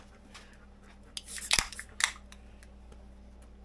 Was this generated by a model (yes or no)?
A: no